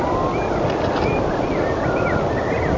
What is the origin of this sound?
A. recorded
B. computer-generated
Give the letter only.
A